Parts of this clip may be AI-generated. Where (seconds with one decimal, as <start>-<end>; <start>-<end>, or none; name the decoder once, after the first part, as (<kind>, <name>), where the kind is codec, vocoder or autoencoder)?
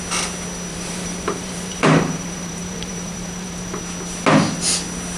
0.7-3.8 (vocoder, BigVGAN v2)